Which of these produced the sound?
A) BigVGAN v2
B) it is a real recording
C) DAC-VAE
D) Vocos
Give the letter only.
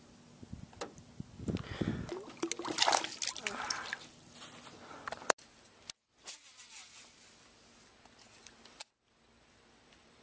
B